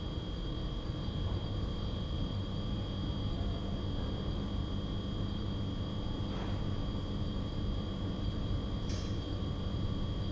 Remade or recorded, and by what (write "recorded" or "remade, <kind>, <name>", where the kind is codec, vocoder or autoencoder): remade, vocoder, BigVGAN v2